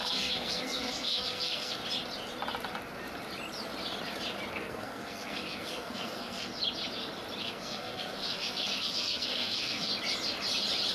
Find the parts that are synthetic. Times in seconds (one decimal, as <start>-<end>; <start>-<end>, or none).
0.0-1.8; 4.5-6.5; 7.4-9.9